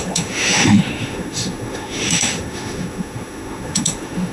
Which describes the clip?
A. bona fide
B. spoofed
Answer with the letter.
B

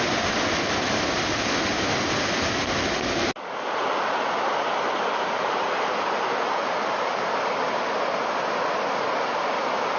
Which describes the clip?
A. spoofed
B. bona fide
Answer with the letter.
B